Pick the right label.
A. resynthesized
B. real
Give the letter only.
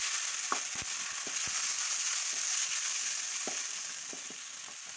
B